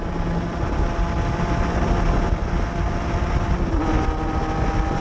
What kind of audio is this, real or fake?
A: real